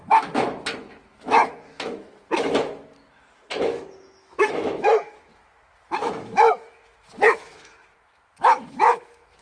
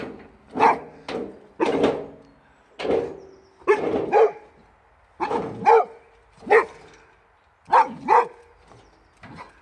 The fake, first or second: first